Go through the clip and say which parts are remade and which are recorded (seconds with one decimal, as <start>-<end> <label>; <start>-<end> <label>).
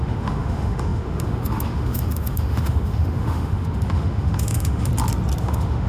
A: 0.0-4.9 remade; 4.9-5.4 recorded; 5.4-5.9 remade